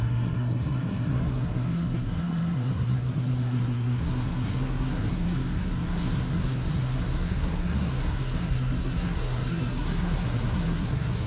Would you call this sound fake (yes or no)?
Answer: yes